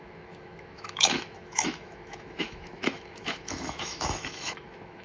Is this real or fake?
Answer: fake